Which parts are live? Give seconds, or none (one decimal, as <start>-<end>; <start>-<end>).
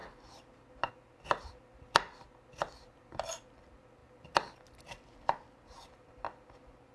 0.0-6.9